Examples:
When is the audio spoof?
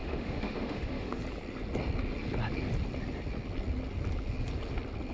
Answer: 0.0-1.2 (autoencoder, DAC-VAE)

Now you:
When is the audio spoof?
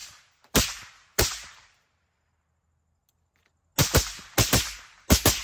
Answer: 0.0-2.3 (vocoder, BigVGAN v2)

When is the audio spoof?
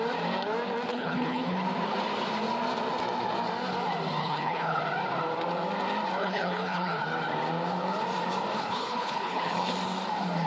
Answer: 0.9-1.6 (codec, HILCodec); 4.2-4.8; 6.2-7.0; 8.6-9.7